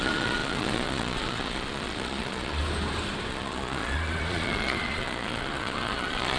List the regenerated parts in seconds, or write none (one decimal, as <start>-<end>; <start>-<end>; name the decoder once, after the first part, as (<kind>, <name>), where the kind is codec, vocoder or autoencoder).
0.0-2.6 (vocoder, Vocos); 3.3-6.4